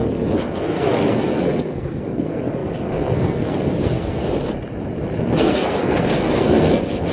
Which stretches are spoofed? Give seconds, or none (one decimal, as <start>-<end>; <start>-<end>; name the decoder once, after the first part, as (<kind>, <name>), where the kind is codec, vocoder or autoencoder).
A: 0.0-4.2 (codec, SNAC); 5.2-7.1